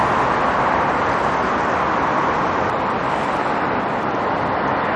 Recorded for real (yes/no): yes